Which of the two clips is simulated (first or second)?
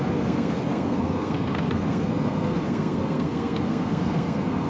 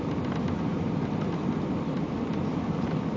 first